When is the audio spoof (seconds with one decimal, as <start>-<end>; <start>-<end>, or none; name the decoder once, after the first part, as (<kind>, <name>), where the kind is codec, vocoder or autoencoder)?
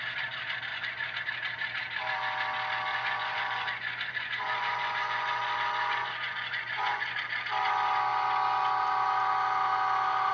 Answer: 0.7-1.2 (vocoder, Vocos); 2.9-7.2